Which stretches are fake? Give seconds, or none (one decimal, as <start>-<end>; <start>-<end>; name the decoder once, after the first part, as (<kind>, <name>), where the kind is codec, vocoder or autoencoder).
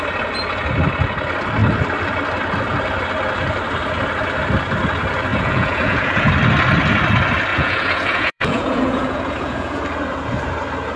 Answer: 5.3-6.3 (vocoder, Vocos); 7.5-9.8